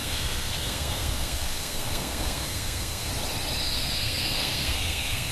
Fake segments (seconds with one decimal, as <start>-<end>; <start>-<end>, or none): 0.0-3.1; 3.6-5.3